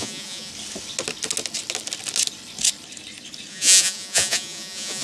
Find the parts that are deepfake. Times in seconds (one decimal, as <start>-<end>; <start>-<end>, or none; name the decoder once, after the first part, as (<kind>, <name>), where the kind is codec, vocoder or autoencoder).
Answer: 0.0-0.5 (vocoder, Vocos); 3.5-5.0